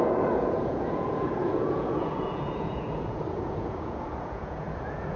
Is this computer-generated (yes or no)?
yes